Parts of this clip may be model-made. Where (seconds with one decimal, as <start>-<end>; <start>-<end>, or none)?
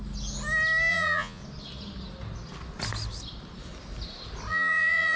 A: 0.9-1.4; 4.5-5.2